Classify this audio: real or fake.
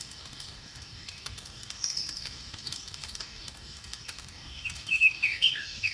fake